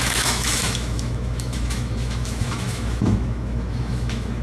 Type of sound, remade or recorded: remade